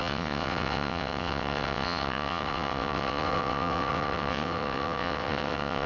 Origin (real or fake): fake